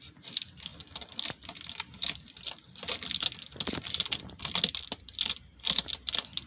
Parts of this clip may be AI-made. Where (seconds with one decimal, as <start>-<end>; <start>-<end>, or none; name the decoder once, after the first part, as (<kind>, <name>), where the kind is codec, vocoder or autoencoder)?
none